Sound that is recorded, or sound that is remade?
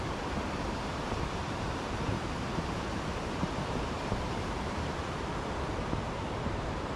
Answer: remade